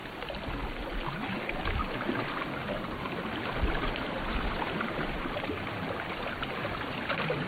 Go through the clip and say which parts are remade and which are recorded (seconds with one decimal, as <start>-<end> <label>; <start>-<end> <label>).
0.0-2.6 recorded; 2.6-6.6 remade; 6.6-7.5 recorded